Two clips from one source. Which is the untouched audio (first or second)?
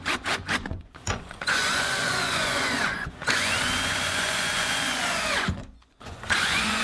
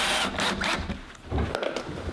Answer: second